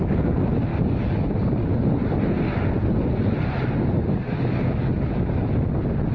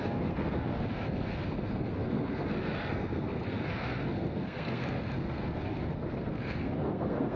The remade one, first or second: second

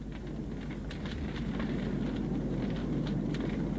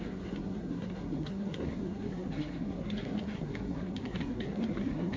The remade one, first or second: second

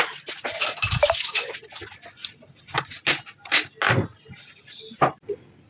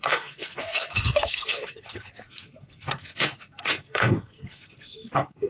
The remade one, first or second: second